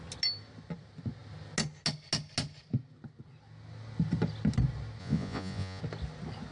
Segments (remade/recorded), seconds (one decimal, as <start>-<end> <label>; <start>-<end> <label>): 0.0-5.0 recorded; 5.0-5.8 remade; 5.8-6.5 recorded